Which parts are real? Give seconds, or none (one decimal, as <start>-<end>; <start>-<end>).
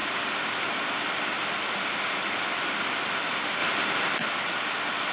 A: 0.0-3.6; 4.2-5.1